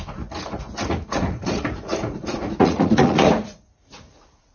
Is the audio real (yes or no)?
no